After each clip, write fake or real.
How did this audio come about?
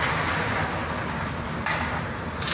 real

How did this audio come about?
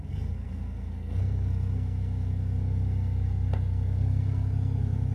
fake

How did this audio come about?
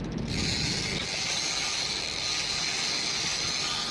real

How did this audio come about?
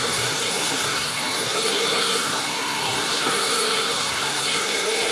fake